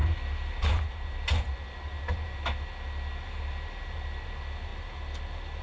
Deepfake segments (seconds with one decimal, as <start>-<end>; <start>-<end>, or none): none